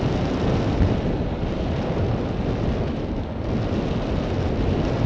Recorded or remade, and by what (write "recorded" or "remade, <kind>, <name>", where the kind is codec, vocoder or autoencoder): recorded